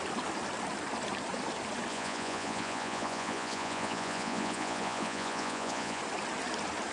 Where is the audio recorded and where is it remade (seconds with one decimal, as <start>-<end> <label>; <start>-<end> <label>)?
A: 0.0-1.9 recorded; 1.9-6.0 remade; 6.0-6.9 recorded